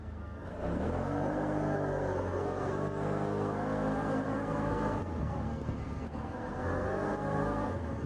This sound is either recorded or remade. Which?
remade